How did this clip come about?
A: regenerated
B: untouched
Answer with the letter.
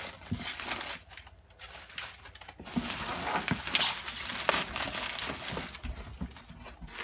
B